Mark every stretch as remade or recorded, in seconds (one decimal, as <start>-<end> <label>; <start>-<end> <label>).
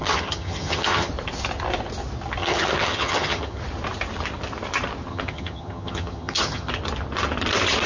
0.0-1.1 remade; 1.1-2.4 recorded; 2.4-3.6 remade; 3.6-5.1 recorded; 5.1-6.7 remade; 6.7-7.9 recorded